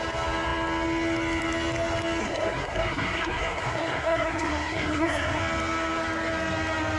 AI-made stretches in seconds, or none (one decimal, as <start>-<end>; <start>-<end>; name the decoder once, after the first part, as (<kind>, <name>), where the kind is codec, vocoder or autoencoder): 2.2-5.4 (codec, SNAC)